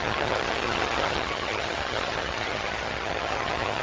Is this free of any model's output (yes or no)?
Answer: no